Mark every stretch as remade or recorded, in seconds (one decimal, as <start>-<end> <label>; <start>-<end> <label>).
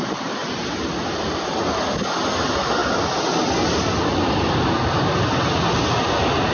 0.0-0.4 recorded; 0.4-1.6 remade; 1.6-6.5 recorded